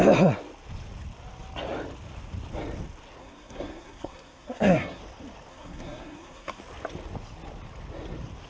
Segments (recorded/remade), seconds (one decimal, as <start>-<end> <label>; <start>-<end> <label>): 0.0-3.2 recorded; 3.2-5.0 remade; 5.0-5.5 recorded; 5.5-6.6 remade; 6.6-8.5 recorded